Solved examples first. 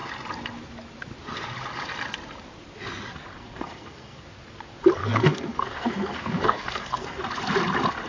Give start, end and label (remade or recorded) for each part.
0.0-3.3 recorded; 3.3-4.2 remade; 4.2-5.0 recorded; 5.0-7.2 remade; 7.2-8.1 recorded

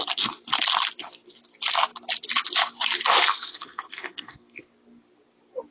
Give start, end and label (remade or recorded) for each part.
0.0-3.2 recorded; 3.2-4.7 remade; 4.7-5.7 recorded

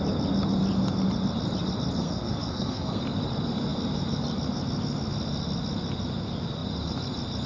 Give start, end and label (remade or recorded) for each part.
0.0-2.0 recorded; 2.0-3.0 remade; 3.0-7.5 recorded

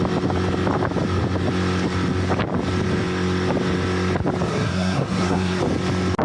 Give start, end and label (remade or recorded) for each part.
0.0-4.5 recorded; 4.5-5.6 remade; 5.6-6.2 recorded

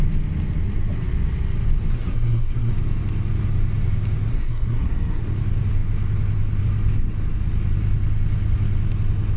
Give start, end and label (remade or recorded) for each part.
0.0-1.9 recorded; 1.9-2.7 remade; 2.7-4.3 recorded; 4.3-5.2 remade; 5.2-9.4 recorded